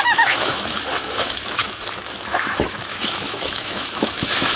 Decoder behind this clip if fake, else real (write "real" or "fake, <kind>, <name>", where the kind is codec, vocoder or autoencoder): fake, autoencoder, DAC-VAE